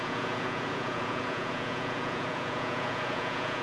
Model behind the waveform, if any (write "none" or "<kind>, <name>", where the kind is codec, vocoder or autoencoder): vocoder, Vocos